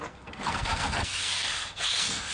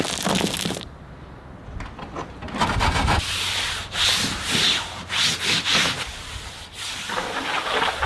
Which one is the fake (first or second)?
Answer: first